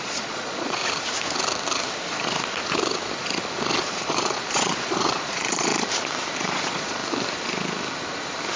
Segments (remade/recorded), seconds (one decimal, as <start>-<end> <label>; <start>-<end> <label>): 0.0-0.8 remade; 0.8-3.8 recorded; 3.8-5.7 remade; 5.7-6.5 recorded; 6.5-7.0 remade; 7.0-8.6 recorded